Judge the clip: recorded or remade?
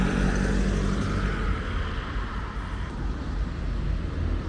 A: recorded